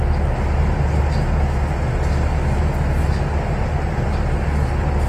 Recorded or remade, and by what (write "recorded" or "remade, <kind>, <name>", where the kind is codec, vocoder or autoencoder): recorded